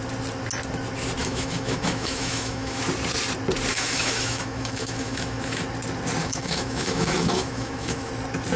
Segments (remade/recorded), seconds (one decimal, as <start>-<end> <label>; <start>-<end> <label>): 0.0-1.2 recorded; 1.2-2.8 remade; 2.8-3.7 recorded; 3.7-5.6 remade; 5.6-6.2 recorded; 6.2-8.1 remade; 8.1-8.6 recorded